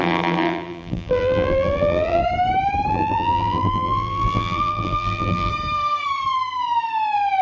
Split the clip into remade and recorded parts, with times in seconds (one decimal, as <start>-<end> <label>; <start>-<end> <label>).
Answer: 0.0-2.2 remade; 2.2-2.9 recorded; 2.9-5.5 remade; 5.5-7.4 recorded